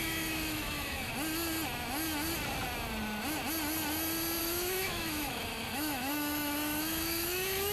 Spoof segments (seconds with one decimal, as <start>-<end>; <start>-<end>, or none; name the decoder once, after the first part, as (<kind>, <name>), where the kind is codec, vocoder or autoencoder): 0.0-1.1 (autoencoder, DAC-VAE); 4.4-7.7